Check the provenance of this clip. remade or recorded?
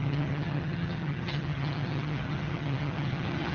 remade